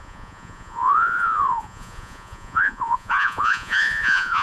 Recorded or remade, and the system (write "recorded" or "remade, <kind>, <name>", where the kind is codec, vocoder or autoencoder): remade, vocoder, Vocos